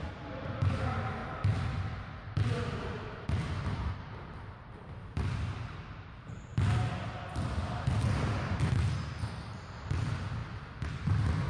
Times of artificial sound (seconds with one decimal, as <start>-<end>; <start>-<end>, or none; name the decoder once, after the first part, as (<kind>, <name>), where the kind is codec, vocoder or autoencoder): 0.0-1.2 (vocoder, BigVGAN v2); 3.5-6.5; 8.9-11.5